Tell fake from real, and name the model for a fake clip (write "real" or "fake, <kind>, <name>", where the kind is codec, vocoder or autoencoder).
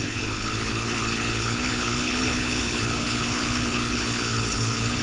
fake, codec, HILCodec